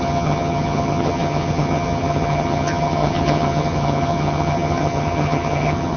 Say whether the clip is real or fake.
fake